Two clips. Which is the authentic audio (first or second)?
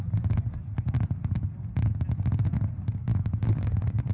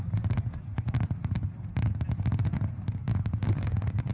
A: first